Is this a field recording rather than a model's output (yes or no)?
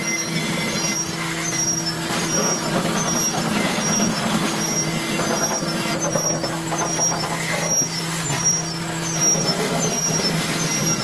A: yes